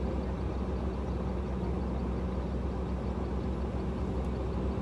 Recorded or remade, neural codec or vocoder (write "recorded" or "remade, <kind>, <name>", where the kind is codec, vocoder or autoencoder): recorded